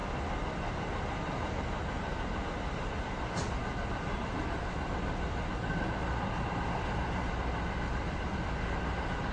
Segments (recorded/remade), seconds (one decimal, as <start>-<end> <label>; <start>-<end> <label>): 0.0-9.3 recorded